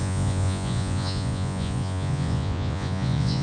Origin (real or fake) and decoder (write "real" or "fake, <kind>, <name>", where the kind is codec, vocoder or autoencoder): fake, vocoder, Vocos